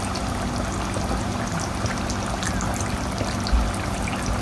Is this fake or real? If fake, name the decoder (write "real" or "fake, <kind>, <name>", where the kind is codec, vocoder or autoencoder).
real